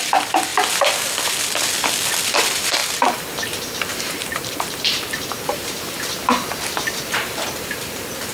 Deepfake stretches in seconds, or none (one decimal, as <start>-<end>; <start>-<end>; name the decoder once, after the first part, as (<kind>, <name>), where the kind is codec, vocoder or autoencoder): 0.0-0.5 (vocoder, BigVGAN v2); 2.3-8.3